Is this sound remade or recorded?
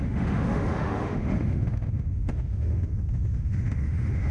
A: remade